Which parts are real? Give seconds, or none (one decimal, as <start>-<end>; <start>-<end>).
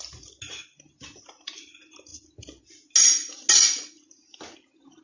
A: 0.0-5.0